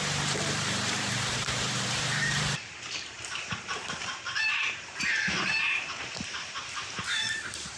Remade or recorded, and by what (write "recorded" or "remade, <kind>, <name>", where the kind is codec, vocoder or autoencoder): remade, vocoder, BigVGAN v2